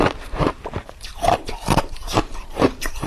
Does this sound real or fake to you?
fake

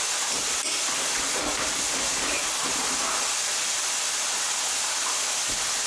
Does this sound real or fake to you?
real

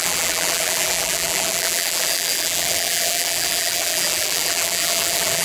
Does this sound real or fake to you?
fake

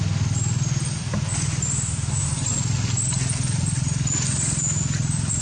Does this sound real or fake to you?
real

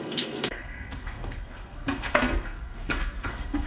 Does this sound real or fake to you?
fake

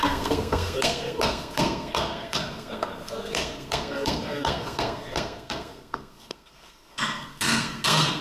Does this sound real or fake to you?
fake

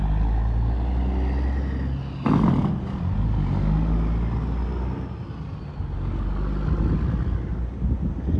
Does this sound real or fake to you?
real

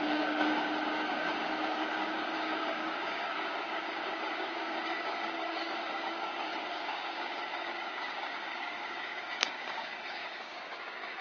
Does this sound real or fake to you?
fake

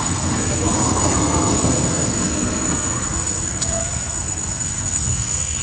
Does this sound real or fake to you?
fake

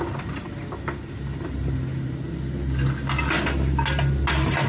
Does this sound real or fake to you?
real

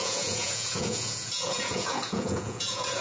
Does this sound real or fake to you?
fake